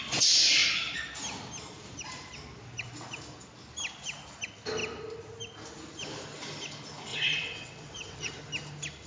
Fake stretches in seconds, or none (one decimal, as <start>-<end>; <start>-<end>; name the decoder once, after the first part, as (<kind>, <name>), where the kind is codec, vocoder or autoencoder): 7.1-8.3 (vocoder, WaveNeXt)